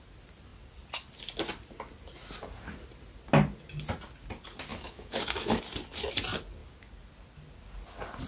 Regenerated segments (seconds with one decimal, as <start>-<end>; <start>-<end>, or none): 4.7-5.6